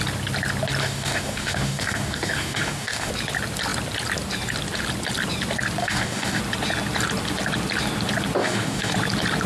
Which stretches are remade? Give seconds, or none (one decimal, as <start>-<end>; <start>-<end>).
0.8-3.1; 5.8-6.4; 8.4-8.9